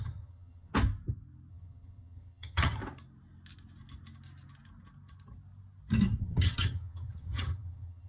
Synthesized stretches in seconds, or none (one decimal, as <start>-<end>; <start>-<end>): 0.0-0.7; 1.5-2.8; 6.2-8.1